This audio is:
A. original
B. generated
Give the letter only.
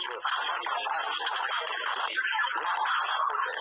A